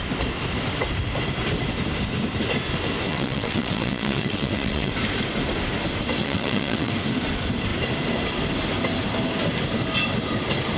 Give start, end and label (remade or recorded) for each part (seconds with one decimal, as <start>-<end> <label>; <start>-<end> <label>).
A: 0.0-3.1 recorded; 3.1-4.9 remade; 4.9-6.2 recorded; 6.2-6.9 remade; 6.9-10.8 recorded